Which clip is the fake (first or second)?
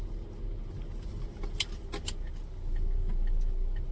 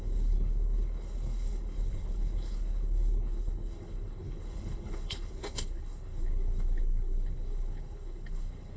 second